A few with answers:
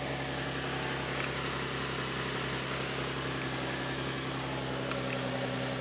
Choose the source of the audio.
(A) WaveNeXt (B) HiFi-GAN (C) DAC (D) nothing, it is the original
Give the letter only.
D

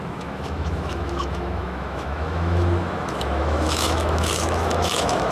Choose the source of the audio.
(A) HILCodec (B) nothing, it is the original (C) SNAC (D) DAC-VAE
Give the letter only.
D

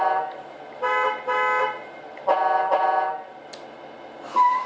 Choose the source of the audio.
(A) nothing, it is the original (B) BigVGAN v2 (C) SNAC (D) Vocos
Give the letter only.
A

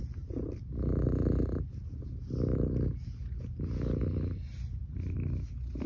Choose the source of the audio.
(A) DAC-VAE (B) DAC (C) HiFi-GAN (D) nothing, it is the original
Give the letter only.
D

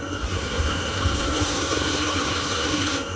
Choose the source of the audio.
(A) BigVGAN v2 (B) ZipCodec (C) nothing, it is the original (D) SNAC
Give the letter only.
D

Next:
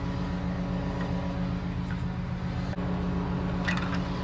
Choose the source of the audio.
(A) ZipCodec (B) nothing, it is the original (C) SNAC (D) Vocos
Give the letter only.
B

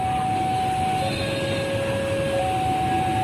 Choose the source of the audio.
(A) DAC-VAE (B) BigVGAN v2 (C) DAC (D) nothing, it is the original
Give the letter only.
D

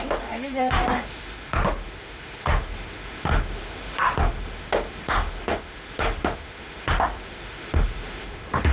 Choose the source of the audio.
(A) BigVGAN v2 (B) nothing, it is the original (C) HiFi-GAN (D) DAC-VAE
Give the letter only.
D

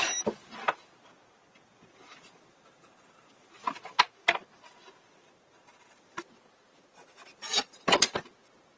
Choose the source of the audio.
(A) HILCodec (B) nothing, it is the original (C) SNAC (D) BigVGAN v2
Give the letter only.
B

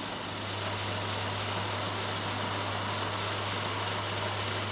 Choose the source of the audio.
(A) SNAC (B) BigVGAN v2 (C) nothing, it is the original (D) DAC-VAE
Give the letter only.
C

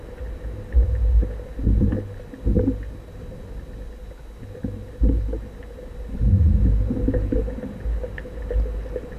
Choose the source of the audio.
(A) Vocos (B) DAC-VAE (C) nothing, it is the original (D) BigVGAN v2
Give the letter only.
C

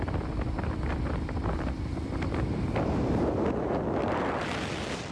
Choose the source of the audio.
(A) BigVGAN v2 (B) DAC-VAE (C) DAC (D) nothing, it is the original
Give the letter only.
D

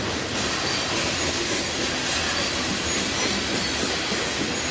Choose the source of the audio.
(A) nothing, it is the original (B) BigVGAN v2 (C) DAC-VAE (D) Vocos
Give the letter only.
A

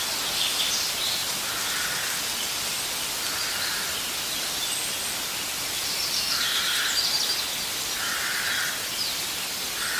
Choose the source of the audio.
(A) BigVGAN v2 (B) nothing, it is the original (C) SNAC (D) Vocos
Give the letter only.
B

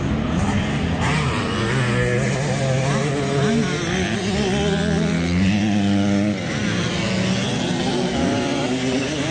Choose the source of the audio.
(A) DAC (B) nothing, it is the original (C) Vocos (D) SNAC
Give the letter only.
B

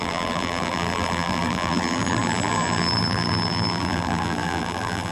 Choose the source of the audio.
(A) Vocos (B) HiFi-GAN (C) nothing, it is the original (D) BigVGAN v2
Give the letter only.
D